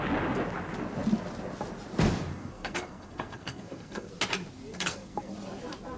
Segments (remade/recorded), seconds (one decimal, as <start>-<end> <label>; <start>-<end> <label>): 0.0-2.3 recorded; 2.3-4.1 remade; 4.1-4.7 recorded; 4.7-5.3 remade; 5.3-6.0 recorded